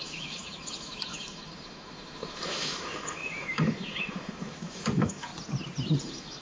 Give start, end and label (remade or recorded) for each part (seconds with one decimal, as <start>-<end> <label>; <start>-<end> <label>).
0.0-5.3 remade; 5.3-6.0 recorded; 6.0-6.4 remade